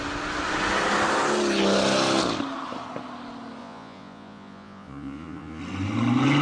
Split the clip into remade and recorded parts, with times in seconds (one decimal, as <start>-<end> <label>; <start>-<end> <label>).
0.0-3.6 recorded; 3.6-5.6 remade; 5.6-6.4 recorded